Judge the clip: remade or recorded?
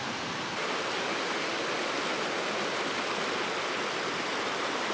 recorded